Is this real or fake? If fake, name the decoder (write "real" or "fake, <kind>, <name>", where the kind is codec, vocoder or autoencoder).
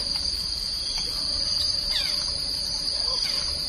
fake, vocoder, BigVGAN v2